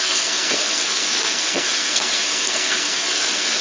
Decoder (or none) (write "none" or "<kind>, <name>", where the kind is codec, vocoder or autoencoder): codec, SNAC